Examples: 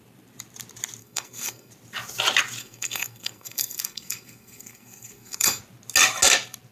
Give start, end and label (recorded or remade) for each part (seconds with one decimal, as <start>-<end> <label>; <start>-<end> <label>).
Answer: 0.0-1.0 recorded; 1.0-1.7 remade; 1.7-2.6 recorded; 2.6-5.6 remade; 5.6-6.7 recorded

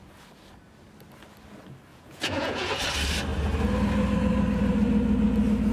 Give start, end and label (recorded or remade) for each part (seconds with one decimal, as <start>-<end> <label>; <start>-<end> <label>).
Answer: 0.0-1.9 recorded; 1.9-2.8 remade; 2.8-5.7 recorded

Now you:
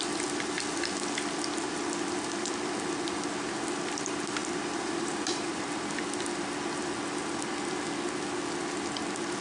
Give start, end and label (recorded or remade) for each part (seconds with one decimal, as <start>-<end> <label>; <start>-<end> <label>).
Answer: 0.0-4.4 recorded; 4.4-5.6 remade; 5.6-9.4 recorded

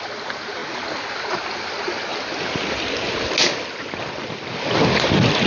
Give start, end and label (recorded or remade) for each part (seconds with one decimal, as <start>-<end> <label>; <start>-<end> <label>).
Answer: 0.0-5.5 recorded

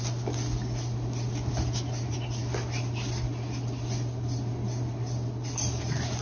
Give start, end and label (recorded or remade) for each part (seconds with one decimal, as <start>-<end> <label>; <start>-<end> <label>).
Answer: 0.0-2.4 recorded; 2.4-6.2 remade

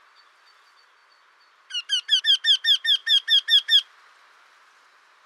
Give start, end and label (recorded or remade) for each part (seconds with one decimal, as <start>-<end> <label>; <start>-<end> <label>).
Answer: 0.0-5.3 recorded

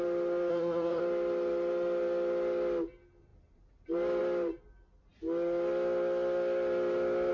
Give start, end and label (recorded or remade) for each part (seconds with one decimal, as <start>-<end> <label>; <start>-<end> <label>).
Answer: 0.0-0.5 recorded; 0.5-1.0 remade; 1.0-7.3 recorded

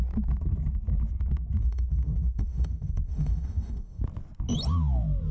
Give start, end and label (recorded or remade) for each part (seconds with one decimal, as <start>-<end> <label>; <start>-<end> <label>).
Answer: 0.0-1.6 recorded; 1.6-4.0 remade; 4.0-5.3 recorded